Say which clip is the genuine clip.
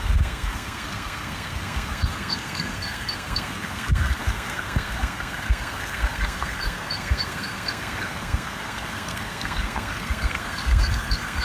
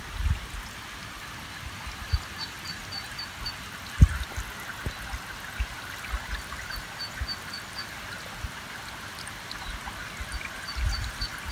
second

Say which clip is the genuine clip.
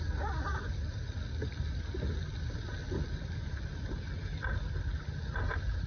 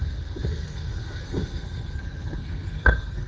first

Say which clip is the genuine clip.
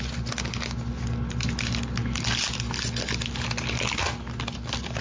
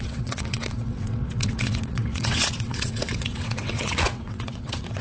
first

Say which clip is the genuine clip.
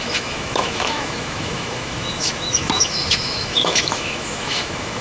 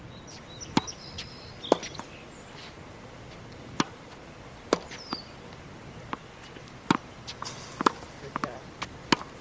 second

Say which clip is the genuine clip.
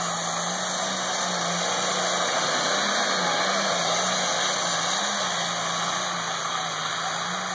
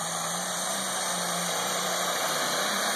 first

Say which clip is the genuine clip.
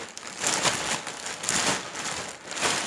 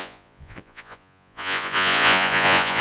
first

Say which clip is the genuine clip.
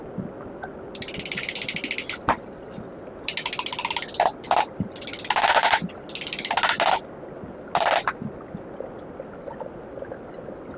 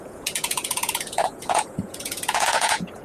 first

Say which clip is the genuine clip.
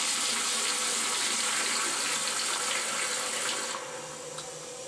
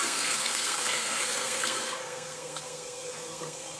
first